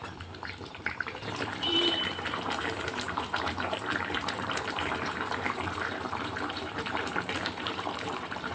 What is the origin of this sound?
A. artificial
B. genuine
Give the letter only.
A